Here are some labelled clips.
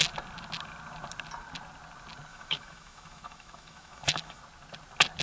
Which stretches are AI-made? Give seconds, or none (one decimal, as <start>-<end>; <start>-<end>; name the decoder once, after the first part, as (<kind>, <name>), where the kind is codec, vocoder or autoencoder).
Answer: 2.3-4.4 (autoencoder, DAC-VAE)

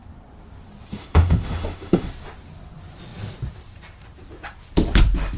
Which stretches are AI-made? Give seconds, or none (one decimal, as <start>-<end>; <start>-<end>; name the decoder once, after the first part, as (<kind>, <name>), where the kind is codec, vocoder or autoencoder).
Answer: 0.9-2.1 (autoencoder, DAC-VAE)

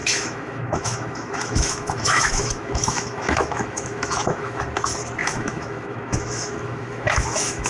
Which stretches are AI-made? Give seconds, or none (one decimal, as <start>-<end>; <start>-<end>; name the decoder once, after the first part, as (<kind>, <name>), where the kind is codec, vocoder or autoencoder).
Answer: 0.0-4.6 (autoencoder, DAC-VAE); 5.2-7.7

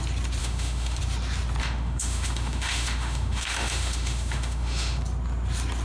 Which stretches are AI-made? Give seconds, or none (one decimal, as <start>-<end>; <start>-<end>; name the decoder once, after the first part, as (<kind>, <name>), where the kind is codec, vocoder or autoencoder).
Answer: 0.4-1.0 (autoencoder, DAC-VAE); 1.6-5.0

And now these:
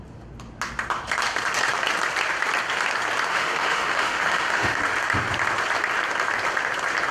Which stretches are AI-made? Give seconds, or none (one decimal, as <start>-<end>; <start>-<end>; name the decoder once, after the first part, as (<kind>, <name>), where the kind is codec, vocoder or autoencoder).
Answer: 3.3-4.8 (autoencoder, DAC-VAE)

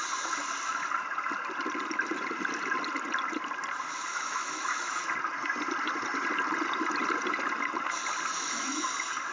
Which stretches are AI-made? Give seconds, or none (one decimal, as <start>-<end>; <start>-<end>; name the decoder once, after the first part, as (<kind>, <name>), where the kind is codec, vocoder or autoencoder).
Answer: 4.1-5.0 (autoencoder, DAC-VAE); 8.3-8.9

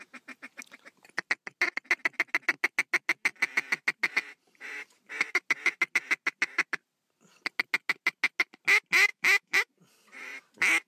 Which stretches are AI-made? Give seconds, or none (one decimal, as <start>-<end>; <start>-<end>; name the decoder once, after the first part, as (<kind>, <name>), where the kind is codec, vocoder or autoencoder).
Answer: 9.1-9.7 (autoencoder, DAC-VAE)

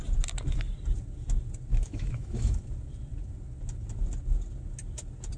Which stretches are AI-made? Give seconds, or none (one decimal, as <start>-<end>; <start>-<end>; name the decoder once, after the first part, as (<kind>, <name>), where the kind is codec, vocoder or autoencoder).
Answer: 1.7-2.6 (autoencoder, DAC-VAE)